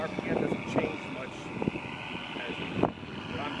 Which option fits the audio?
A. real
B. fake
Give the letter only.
A